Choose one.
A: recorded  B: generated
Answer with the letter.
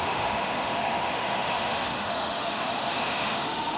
B